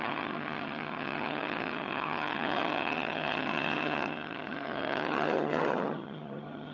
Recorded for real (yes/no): no